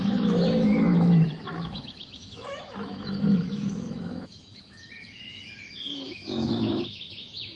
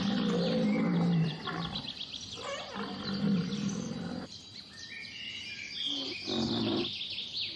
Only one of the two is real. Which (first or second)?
second